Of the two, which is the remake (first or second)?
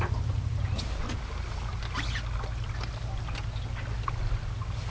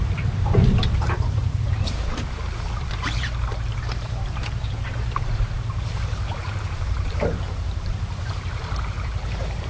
second